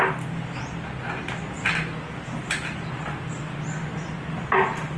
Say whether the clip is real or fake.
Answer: real